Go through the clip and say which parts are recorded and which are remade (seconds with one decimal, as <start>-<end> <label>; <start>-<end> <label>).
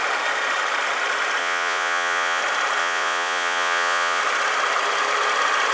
0.0-1.4 recorded; 1.4-2.4 remade; 2.4-2.8 recorded; 2.8-4.2 remade; 4.2-5.7 recorded